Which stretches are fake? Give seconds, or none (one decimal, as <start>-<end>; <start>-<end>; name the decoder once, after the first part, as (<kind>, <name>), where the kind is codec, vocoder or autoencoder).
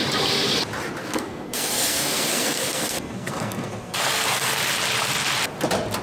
1.0-4.6 (codec, SNAC)